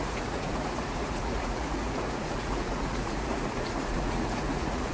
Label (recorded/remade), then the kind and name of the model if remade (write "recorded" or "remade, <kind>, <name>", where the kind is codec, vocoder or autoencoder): remade, vocoder, Vocos